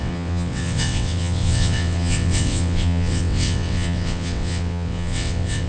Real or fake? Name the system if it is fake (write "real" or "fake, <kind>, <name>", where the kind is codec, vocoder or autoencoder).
fake, vocoder, WaveNeXt